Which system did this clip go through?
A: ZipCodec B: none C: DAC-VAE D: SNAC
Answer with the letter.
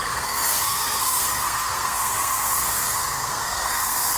D